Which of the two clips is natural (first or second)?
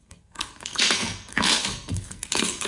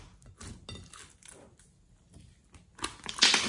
second